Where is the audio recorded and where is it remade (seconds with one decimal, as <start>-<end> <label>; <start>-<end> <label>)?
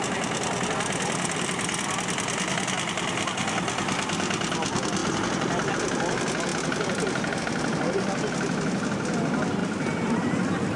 0.0-5.0 recorded; 5.0-5.7 remade; 5.7-9.6 recorded; 9.6-10.8 remade